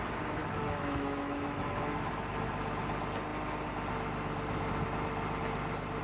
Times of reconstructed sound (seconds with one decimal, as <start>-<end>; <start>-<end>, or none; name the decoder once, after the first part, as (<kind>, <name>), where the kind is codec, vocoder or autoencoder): 0.4-2.1 (autoencoder, DAC-VAE)